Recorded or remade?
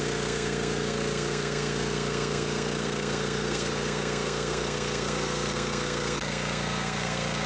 remade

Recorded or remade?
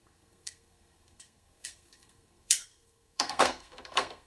remade